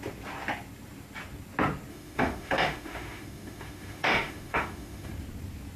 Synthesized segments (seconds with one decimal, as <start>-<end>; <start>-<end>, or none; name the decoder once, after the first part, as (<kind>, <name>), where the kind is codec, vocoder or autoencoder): 1.9-5.1 (autoencoder, DAC-VAE)